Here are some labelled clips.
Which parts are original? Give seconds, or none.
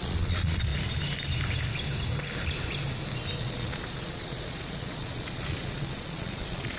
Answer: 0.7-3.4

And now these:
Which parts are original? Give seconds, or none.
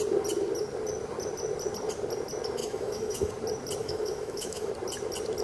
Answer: 0.0-2.6; 3.3-3.8; 4.7-5.4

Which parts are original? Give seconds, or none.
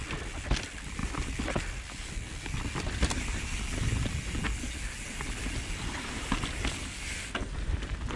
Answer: 0.0-8.2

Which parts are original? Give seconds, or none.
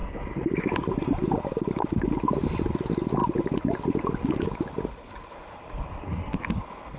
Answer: 0.0-7.0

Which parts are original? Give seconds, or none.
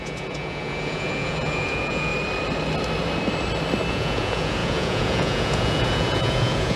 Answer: 2.1-3.9